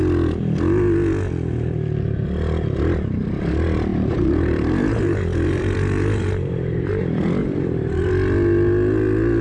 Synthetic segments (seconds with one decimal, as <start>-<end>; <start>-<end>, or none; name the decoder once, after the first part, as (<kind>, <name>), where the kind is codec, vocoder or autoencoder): 3.9-6.9 (vocoder, BigVGAN v2); 7.4-8.1